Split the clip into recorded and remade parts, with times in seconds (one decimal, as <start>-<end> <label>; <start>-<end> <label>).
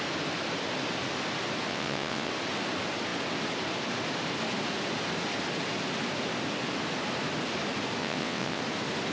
0.0-1.7 recorded; 1.7-2.3 remade; 2.3-8.0 recorded; 8.0-8.6 remade; 8.6-9.1 recorded